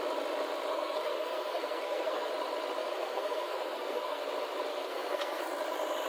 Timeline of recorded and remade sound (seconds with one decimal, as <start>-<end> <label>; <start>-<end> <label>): 0.0-0.7 recorded; 0.7-2.3 remade; 2.3-2.8 recorded; 2.8-4.2 remade; 4.2-4.7 recorded; 4.7-5.4 remade; 5.4-6.1 recorded